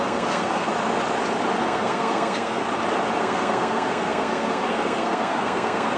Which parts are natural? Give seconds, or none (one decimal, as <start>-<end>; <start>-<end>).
0.7-1.6; 2.6-3.2